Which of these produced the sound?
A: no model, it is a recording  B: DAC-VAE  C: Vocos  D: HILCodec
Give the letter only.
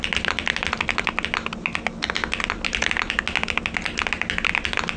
A